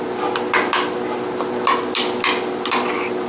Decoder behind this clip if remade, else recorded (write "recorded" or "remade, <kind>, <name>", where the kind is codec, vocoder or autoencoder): recorded